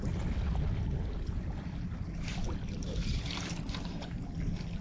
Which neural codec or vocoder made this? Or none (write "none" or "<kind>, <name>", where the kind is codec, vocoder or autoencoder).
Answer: none